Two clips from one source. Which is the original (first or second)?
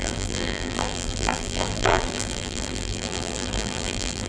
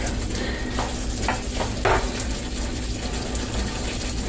second